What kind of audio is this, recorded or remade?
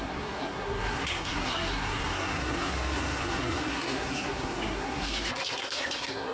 remade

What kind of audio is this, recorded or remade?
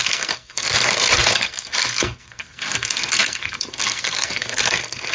remade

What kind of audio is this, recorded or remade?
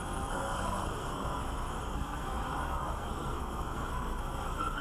remade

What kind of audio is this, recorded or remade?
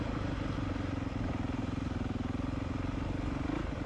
recorded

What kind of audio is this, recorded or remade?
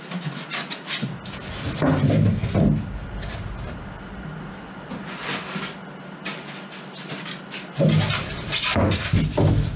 recorded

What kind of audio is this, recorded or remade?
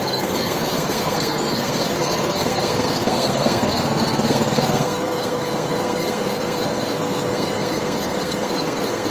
remade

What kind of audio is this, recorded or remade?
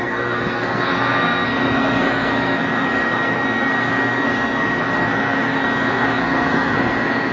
remade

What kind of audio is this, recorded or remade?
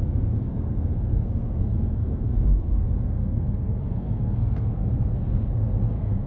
remade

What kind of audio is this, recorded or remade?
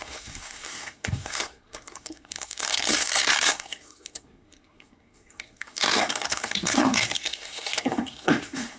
remade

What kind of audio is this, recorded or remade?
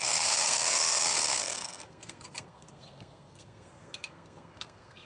remade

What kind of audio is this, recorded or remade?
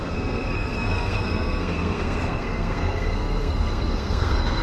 remade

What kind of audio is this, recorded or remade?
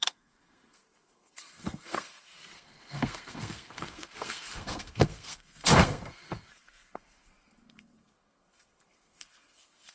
remade